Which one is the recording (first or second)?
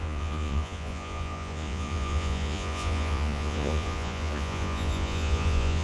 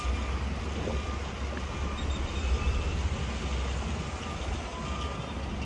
second